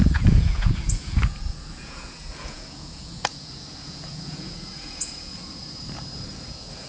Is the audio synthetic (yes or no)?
yes